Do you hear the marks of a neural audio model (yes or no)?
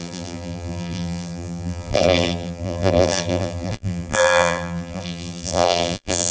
yes